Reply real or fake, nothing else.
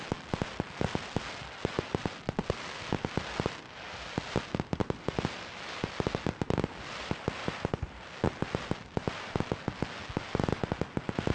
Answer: real